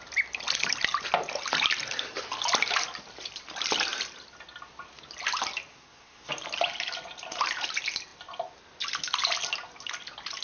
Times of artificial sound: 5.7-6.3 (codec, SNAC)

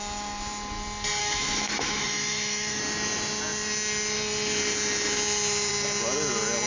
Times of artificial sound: 1.2-2.8 (autoencoder, DAC-VAE)

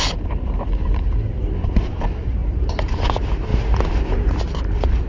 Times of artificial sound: 2.4-3.0 (vocoder, BigVGAN v2); 3.5-4.4